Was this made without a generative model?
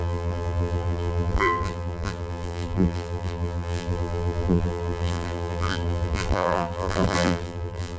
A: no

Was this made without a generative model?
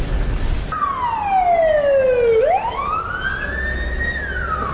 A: yes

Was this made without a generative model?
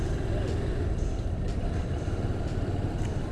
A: yes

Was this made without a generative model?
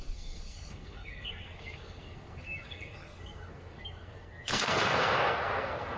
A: no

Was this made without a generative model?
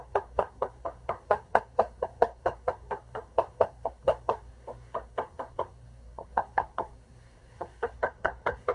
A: no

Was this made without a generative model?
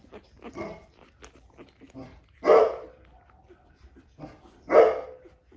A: yes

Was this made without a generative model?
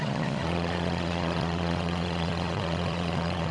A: no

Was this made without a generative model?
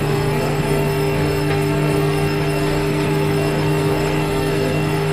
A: no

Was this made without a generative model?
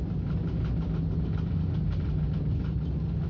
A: yes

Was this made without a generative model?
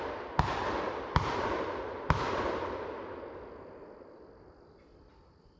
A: yes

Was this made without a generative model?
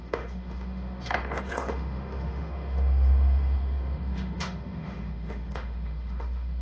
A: no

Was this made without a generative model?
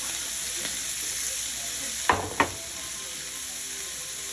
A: yes